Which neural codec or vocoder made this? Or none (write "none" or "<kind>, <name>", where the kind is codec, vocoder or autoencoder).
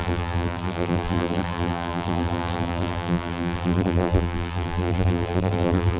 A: vocoder, BigVGAN v2